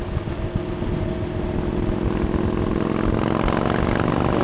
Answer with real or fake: real